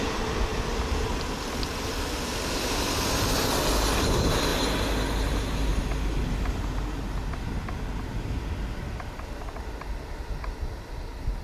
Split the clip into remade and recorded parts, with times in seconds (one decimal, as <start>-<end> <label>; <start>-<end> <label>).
0.0-11.4 recorded